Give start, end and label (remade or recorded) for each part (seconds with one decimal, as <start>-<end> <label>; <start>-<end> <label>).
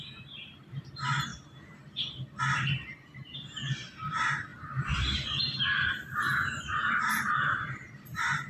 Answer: 0.0-1.3 remade; 1.3-2.4 recorded; 2.4-8.5 remade